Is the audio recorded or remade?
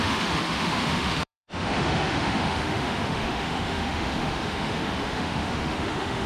remade